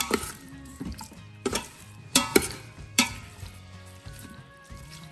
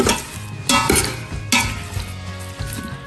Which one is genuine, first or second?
second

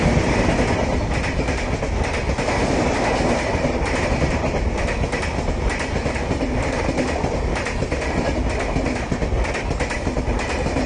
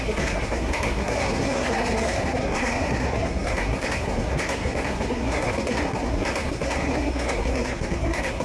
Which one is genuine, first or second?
first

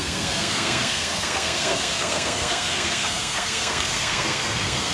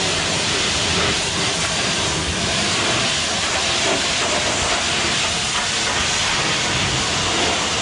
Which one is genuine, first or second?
second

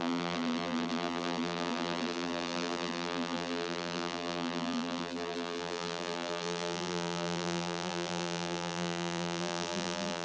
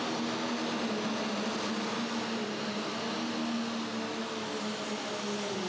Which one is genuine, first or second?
second